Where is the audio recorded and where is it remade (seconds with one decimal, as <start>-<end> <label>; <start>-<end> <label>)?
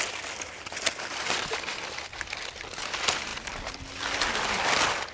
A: 0.0-5.1 recorded